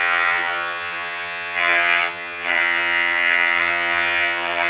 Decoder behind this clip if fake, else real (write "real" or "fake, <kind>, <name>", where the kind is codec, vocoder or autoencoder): fake, vocoder, HiFi-GAN